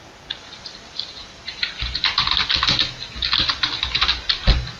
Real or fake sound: real